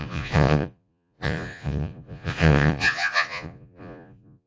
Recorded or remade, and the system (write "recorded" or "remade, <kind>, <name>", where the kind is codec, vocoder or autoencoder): remade, vocoder, Vocos